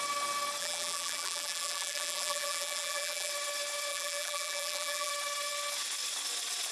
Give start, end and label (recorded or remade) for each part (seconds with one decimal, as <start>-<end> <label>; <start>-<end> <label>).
0.0-0.6 recorded; 0.6-3.3 remade; 3.3-3.9 recorded; 3.9-5.1 remade; 5.1-6.7 recorded

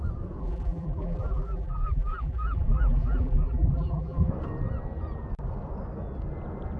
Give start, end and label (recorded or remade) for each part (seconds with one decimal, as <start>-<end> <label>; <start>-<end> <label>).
0.0-0.4 recorded; 0.4-4.3 remade; 4.3-6.8 recorded

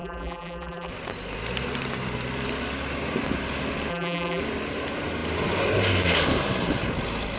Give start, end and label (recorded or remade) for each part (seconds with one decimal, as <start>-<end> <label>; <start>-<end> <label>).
0.0-0.9 remade; 0.9-3.9 recorded; 3.9-4.4 remade; 4.4-7.4 recorded

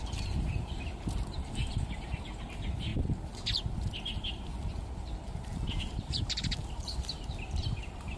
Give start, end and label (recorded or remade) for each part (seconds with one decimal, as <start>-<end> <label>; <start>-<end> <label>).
0.0-2.9 remade; 2.9-5.8 recorded; 5.8-8.2 remade

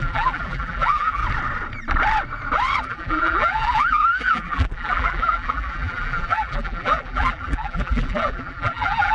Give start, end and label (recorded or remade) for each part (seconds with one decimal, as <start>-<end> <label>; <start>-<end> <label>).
0.0-1.2 remade; 1.2-2.8 recorded; 2.8-9.1 remade

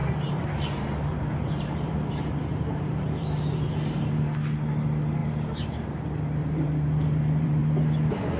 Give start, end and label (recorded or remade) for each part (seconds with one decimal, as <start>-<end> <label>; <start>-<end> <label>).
0.0-4.2 remade; 4.2-6.4 recorded; 6.4-7.6 remade; 7.6-8.4 recorded

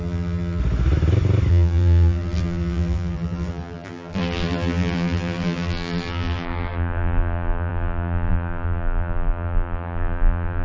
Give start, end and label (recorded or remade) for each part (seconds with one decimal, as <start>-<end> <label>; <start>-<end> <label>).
0.0-0.6 remade; 0.6-1.5 recorded; 1.5-10.6 remade